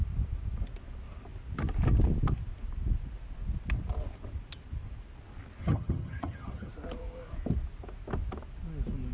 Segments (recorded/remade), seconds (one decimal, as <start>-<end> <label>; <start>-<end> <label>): 0.0-5.6 recorded; 5.6-6.7 remade; 6.7-9.1 recorded

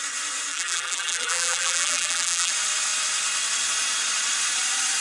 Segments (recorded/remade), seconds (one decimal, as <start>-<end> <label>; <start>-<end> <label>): 0.0-0.5 recorded; 0.5-2.5 remade; 2.5-5.0 recorded

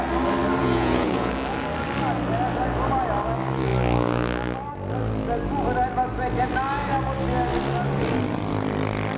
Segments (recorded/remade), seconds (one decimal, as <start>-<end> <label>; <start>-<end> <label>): 0.0-0.6 recorded; 0.6-1.3 remade; 1.3-9.2 recorded

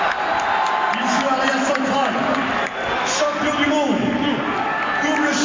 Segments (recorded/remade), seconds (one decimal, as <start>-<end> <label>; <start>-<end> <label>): 0.0-5.4 recorded

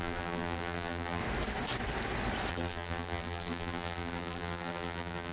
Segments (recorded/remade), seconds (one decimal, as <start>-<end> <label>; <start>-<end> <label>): 0.0-1.2 remade; 1.2-2.5 recorded; 2.5-5.3 remade

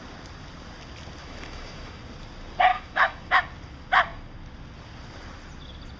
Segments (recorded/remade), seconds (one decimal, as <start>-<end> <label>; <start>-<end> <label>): 0.0-1.2 recorded; 1.2-2.0 remade; 2.0-2.7 recorded; 2.7-3.4 remade; 3.4-6.0 recorded

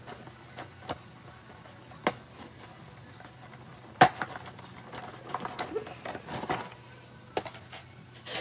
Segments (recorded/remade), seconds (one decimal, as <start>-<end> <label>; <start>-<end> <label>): 0.0-8.4 recorded